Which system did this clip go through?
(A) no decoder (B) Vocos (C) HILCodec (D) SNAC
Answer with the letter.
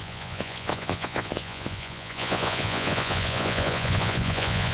B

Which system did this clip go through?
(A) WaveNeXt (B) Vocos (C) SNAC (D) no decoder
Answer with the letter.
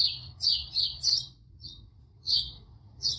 B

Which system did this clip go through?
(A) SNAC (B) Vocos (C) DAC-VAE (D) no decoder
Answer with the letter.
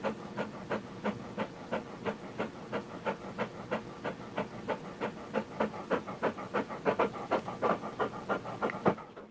D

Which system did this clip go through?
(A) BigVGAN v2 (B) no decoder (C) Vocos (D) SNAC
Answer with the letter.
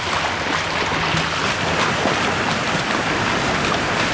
B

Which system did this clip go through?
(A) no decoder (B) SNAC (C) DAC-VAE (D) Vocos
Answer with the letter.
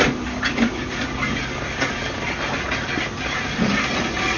A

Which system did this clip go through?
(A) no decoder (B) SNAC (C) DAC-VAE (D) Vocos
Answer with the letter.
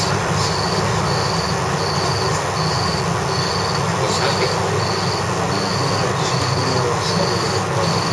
A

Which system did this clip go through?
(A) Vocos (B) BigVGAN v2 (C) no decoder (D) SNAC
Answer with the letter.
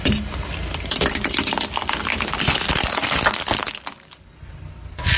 C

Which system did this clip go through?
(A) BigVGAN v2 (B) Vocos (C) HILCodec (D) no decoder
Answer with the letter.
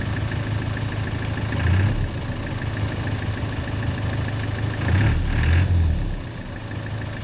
D